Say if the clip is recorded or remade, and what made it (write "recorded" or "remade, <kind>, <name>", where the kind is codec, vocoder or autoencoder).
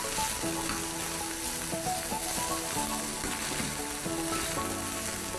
recorded